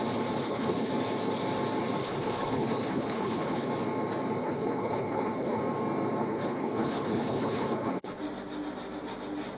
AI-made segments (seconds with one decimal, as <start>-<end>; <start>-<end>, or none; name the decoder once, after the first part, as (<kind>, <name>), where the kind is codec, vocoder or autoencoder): 0.4-0.9 (codec, HILCodec); 2.0-3.7; 4.4-5.6; 6.2-8.2